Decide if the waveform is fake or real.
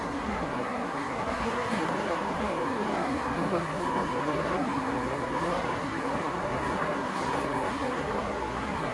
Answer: fake